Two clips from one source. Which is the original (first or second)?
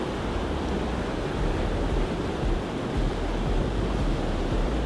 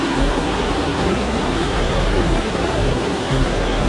first